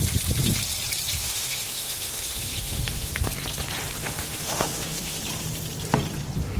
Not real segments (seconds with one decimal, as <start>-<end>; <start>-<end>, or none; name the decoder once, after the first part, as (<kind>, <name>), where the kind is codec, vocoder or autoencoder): 1.2-3.1 (autoencoder, DAC-VAE); 4.0-5.2